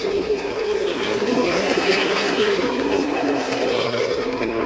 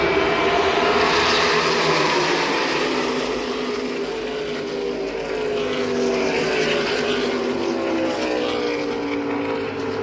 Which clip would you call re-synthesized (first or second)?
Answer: first